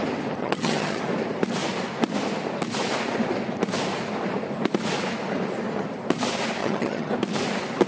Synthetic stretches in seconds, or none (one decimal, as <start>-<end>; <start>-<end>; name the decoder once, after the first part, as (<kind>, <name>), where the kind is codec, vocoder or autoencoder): 0.4-1.0 (vocoder, HiFi-GAN); 6.6-7.1